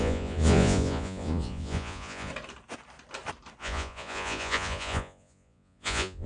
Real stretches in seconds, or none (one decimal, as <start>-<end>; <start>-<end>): 2.3-3.6